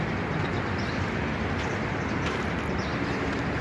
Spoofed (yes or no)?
yes